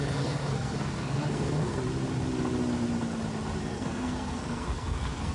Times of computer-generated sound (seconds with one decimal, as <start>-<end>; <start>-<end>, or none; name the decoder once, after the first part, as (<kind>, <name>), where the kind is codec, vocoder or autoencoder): 0.0-1.8 (codec, SNAC); 3.6-5.3